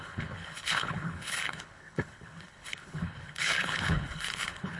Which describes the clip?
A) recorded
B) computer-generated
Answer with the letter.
B